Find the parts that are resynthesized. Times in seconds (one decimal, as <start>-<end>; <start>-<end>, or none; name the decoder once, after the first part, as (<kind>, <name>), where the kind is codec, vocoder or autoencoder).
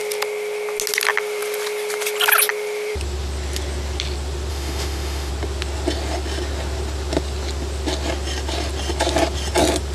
4.5-5.3 (autoencoder, DAC-VAE)